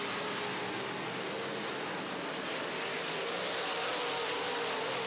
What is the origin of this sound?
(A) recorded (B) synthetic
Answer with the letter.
A